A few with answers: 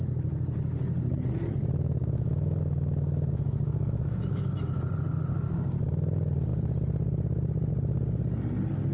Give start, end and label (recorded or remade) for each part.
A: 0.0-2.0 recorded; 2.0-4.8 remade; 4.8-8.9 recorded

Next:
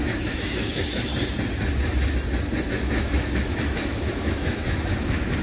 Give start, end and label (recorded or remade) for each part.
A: 0.0-1.1 remade; 1.1-2.7 recorded; 2.7-5.4 remade